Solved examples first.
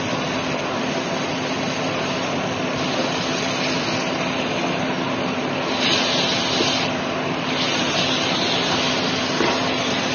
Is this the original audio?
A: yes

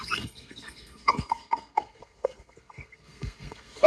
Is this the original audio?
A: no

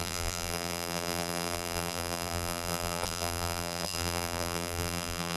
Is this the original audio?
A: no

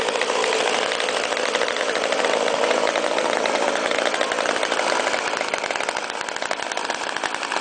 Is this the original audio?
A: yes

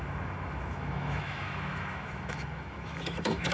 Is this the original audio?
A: no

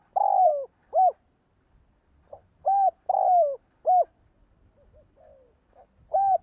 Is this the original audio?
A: yes